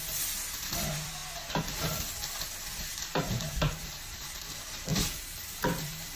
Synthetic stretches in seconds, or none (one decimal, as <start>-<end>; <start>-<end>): 0.0-1.2; 2.9-6.2